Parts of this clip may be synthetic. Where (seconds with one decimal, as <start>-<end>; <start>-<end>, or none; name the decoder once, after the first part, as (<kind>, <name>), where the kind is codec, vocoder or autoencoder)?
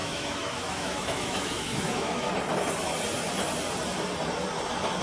0.0-2.3 (autoencoder, DAC-VAE)